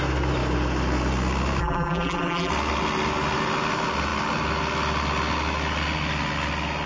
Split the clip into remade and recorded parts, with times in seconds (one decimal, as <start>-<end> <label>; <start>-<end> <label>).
0.0-1.6 recorded; 1.6-2.5 remade; 2.5-6.9 recorded